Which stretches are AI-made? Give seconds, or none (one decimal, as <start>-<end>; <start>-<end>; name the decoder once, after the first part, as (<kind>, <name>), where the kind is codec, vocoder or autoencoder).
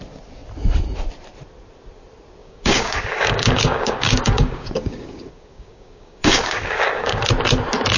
2.4-7.2 (codec, DAC)